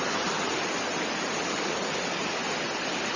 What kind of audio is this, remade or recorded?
recorded